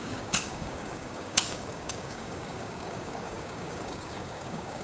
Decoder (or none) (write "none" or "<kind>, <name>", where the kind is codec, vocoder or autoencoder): codec, DAC